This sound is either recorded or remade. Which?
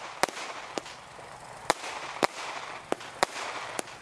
recorded